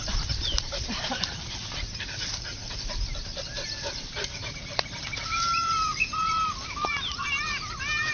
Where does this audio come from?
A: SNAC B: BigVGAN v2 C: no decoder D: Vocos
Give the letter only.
B